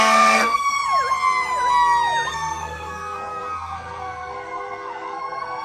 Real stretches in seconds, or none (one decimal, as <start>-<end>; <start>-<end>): 0.8-2.3